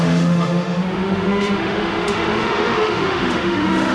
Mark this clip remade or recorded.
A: remade